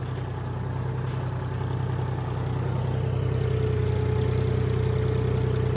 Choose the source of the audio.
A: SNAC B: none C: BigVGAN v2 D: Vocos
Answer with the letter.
B